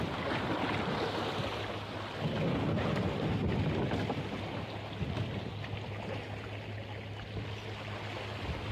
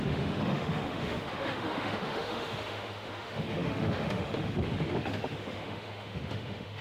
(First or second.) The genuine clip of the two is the first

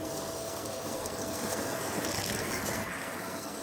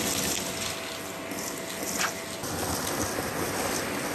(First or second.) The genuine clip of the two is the second